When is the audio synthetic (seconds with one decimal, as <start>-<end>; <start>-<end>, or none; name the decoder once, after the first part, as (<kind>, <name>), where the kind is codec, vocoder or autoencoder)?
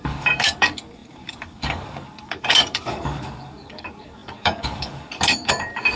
0.0-6.0 (codec, DAC)